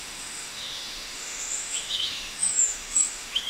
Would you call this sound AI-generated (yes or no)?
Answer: yes